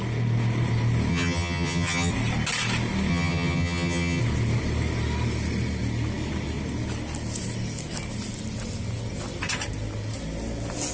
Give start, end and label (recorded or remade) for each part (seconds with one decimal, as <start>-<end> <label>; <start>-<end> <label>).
0.0-1.1 recorded; 1.1-2.1 remade; 2.1-3.1 recorded; 3.1-4.2 remade; 4.2-10.9 recorded